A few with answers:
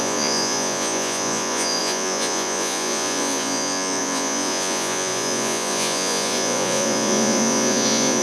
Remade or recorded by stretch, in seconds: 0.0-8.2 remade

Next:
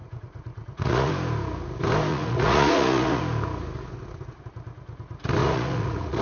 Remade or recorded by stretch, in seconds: 0.0-1.1 remade; 1.1-2.1 recorded; 2.1-3.2 remade; 3.2-5.4 recorded; 5.4-6.2 remade